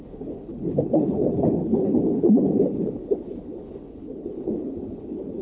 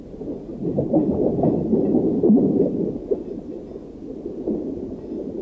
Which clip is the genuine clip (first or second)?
second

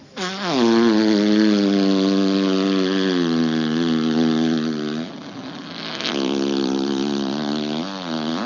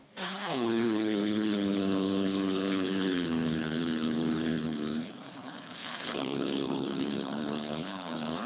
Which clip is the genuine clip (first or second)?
first